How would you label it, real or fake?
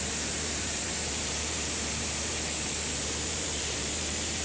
fake